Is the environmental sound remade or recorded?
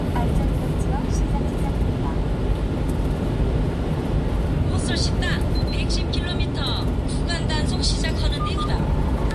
recorded